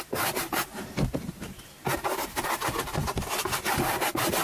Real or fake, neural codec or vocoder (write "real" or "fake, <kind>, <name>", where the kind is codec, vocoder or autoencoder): real